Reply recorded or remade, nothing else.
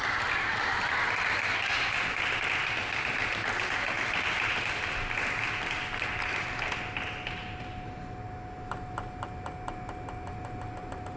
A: recorded